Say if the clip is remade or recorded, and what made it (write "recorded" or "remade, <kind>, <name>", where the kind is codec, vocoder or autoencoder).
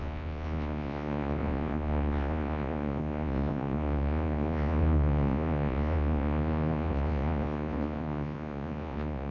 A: remade, vocoder, Vocos